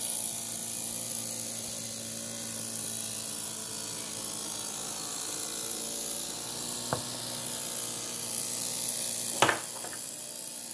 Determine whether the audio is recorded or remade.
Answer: recorded